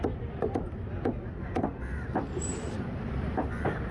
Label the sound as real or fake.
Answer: real